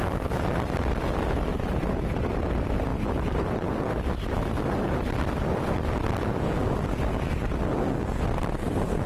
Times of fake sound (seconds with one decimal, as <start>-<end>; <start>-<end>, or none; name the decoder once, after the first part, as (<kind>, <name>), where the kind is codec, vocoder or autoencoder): 1.5-2.5 (vocoder, BigVGAN v2); 2.9-5.2